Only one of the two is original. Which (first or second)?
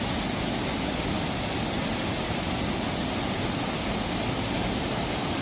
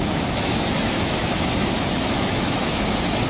first